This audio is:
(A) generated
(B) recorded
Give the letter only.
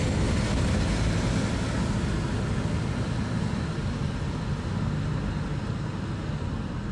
B